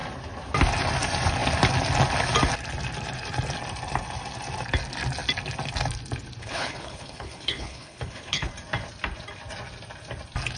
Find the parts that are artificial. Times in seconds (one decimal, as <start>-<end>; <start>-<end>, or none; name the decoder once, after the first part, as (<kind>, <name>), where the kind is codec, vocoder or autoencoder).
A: 6.4-8.5 (codec, HILCodec)

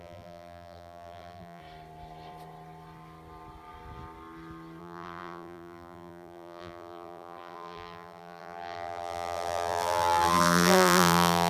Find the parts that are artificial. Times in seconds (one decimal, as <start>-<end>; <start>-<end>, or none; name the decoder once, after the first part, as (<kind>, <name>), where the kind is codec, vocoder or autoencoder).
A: 0.0-1.6 (vocoder, BigVGAN v2); 4.8-11.5

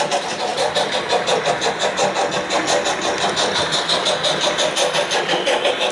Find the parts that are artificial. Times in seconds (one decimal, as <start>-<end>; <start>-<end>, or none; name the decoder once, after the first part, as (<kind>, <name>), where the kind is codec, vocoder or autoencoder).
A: none

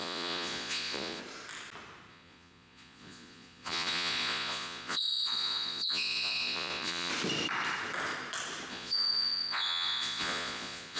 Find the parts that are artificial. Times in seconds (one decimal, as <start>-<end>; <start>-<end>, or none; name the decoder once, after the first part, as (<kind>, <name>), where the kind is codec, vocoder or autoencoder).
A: 0.0-1.2 (vocoder, Vocos); 2.1-7.1; 8.7-11.0

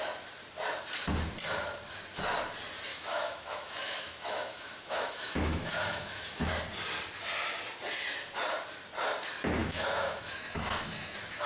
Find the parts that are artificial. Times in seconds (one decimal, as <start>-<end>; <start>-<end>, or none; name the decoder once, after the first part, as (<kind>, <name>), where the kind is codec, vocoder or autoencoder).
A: 2.9-6.5 (autoencoder, DAC-VAE); 9.6-11.5

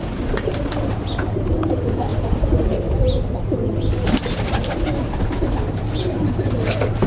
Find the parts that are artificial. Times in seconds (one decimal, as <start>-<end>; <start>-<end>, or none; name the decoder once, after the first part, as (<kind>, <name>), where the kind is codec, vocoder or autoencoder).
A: none

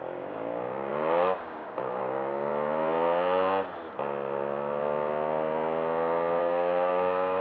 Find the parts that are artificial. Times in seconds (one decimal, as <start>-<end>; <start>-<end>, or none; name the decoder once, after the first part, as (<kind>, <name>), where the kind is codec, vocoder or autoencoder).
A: 0.0-2.5 (codec, DAC); 6.4-7.4

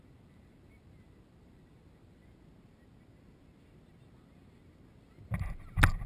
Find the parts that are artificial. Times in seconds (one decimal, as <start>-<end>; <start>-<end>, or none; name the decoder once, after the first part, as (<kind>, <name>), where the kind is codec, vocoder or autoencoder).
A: 0.0-2.2 (vocoder, BigVGAN v2)